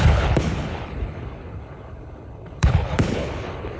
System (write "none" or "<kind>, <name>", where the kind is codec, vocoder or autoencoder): codec, HILCodec